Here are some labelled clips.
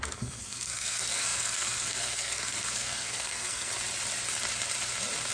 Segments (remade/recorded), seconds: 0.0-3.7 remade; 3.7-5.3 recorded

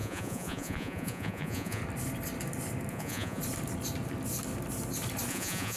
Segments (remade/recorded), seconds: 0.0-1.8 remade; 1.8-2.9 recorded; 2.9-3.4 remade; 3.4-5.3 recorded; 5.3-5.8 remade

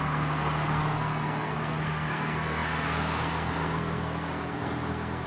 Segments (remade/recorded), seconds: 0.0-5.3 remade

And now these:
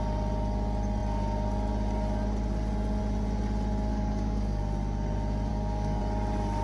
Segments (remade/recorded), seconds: 0.0-3.9 recorded; 3.9-4.6 remade; 4.6-5.5 recorded; 5.5-6.0 remade; 6.0-6.6 recorded